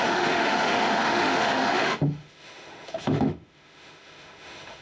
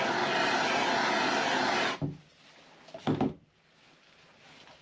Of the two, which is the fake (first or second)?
first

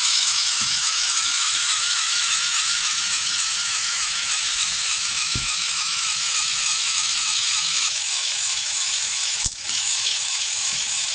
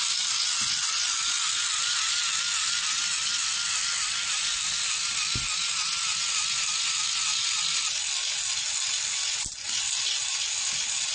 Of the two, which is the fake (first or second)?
first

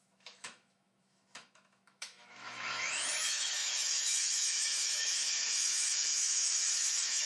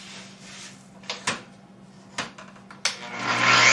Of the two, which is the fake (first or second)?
first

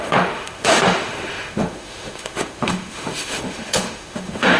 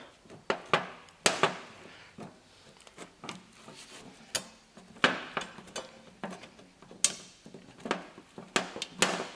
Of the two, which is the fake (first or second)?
first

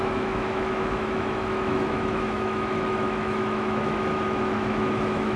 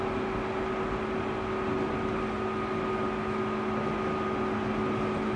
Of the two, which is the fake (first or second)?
first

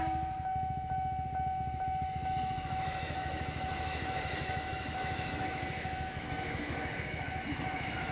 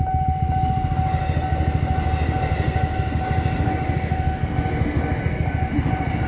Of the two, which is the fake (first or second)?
first